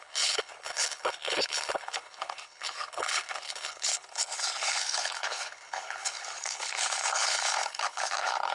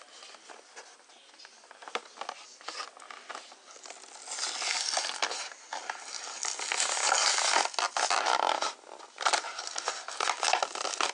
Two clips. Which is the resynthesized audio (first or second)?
first